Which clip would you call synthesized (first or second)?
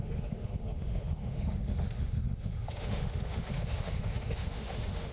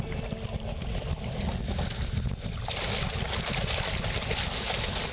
first